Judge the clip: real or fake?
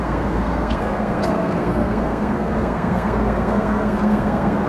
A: fake